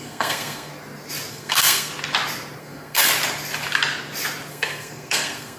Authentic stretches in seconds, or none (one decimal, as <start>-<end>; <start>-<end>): 0.7-1.3; 1.9-2.6; 3.1-4.5